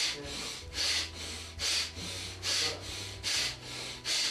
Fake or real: real